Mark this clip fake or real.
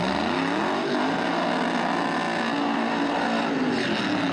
real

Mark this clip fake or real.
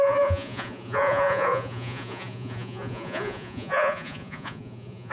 fake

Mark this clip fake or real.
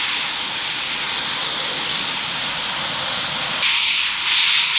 real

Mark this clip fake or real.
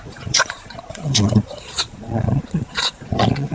fake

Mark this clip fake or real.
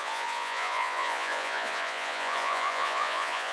fake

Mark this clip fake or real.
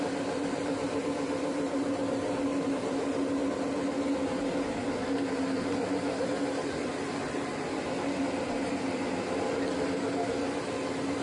real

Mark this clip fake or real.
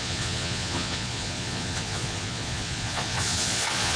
fake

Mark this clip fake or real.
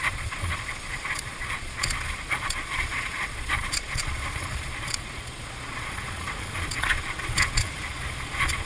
fake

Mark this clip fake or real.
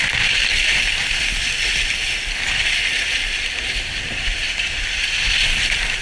real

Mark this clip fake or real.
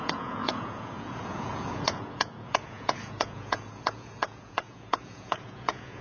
fake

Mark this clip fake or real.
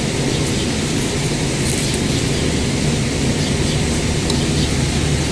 real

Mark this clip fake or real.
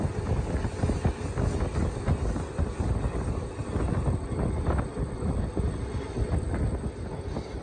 real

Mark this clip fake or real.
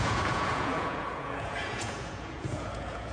fake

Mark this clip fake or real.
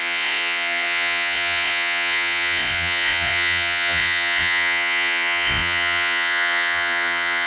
fake